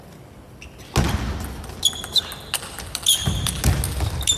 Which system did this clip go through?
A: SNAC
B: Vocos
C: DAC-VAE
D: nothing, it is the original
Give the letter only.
D